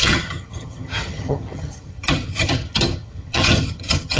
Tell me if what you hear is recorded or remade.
remade